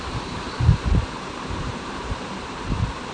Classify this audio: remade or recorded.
remade